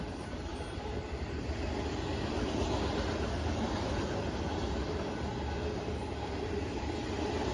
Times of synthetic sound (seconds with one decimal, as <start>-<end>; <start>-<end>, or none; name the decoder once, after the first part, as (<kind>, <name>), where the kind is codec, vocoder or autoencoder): 0.0-2.1 (vocoder, BigVGAN v2); 6.1-7.5